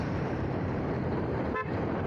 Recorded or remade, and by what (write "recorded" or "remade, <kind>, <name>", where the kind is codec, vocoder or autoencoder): remade, vocoder, BigVGAN v2